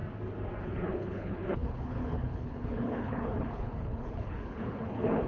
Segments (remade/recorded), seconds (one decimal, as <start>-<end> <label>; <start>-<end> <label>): 0.0-0.6 recorded; 0.6-5.3 remade